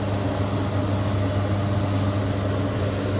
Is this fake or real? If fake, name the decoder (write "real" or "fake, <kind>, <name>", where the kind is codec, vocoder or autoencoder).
real